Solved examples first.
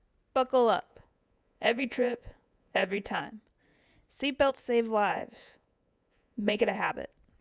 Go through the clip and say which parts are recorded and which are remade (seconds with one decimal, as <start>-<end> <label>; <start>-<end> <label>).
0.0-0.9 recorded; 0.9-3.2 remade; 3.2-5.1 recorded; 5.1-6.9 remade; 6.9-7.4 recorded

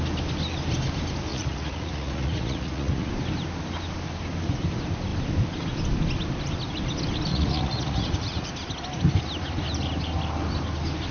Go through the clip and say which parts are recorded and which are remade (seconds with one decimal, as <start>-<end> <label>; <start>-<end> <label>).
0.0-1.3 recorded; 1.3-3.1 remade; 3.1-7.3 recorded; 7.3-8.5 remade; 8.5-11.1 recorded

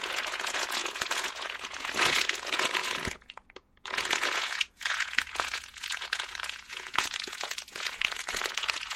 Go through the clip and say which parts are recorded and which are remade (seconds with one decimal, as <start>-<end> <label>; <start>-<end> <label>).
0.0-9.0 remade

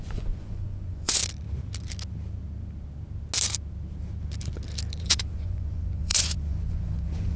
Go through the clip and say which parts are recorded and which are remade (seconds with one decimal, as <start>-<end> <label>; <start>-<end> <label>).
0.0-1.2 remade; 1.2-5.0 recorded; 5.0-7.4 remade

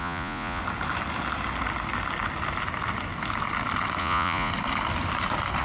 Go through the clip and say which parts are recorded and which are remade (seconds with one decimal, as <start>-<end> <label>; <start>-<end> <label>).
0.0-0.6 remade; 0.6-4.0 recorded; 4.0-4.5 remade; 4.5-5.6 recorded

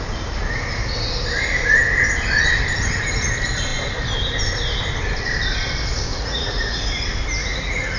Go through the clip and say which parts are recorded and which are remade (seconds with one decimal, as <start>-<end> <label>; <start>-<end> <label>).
0.0-6.1 recorded; 6.1-6.8 remade; 6.8-7.4 recorded; 7.4-8.0 remade